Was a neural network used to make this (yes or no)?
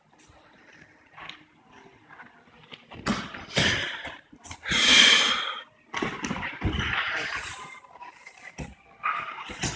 no